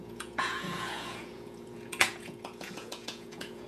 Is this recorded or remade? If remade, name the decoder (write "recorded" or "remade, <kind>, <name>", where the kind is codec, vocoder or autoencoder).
remade, vocoder, Vocos